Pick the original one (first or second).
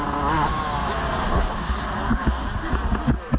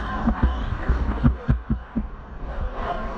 first